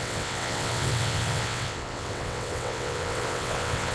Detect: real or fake fake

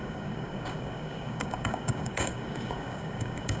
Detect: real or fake fake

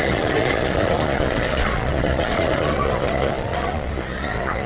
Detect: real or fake fake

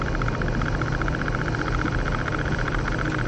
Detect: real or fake real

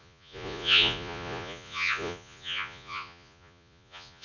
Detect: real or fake fake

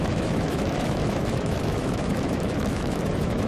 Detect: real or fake fake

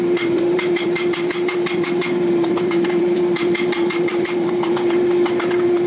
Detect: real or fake fake